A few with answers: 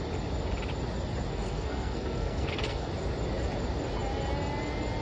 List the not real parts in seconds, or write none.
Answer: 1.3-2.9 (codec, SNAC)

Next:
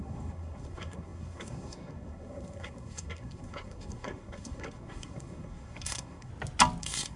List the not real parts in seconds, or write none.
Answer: 0.0-6.3 (codec, SNAC); 6.8-7.2

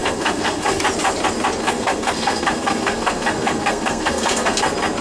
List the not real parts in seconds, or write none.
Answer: 0.0-0.8 (codec, SNAC); 1.6-4.6

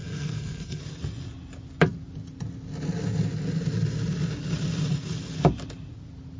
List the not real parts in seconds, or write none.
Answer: 0.0-0.8 (codec, SNAC)

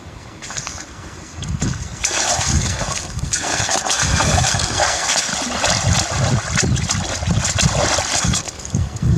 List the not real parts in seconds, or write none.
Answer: 0.0-5.3 (codec, SNAC); 8.2-9.2

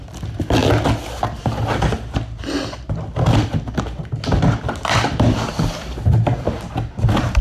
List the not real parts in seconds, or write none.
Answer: none

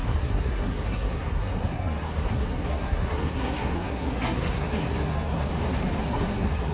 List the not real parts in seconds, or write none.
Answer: 0.0-5.5 (codec, SNAC); 6.0-6.7